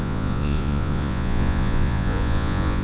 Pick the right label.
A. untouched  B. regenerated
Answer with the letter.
B